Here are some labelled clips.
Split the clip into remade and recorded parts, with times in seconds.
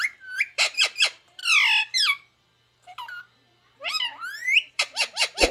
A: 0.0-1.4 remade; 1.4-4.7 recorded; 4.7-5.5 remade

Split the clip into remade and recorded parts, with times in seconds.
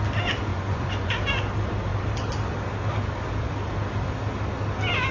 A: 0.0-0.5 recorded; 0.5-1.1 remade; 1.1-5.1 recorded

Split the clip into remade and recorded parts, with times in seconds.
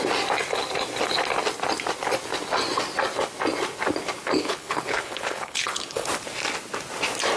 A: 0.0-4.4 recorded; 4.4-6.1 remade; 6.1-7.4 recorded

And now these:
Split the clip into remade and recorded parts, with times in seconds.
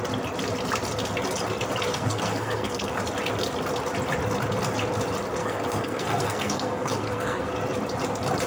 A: 0.0-1.9 recorded; 1.9-3.0 remade; 3.0-5.4 recorded; 5.4-7.5 remade; 7.5-8.5 recorded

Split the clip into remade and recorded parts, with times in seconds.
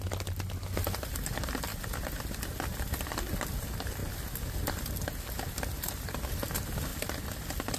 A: 0.0-7.8 recorded